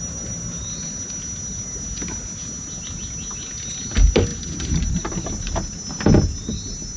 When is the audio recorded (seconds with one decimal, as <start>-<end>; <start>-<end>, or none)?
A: 0.0-7.0